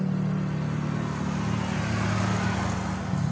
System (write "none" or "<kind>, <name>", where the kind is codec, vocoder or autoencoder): none